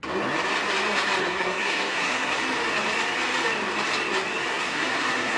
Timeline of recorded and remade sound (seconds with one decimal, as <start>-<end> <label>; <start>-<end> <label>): 0.0-1.2 recorded; 1.2-2.4 remade; 2.4-4.5 recorded; 4.5-5.4 remade